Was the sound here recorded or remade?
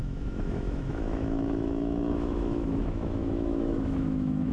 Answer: remade